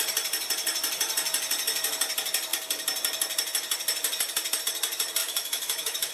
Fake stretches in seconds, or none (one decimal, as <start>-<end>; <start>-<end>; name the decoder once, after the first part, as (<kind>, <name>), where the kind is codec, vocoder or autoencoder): 5.2-6.1 (autoencoder, DAC-VAE)